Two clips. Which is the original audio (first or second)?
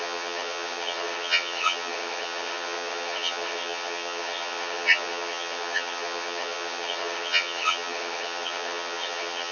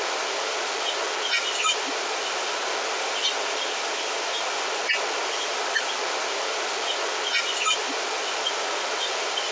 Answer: second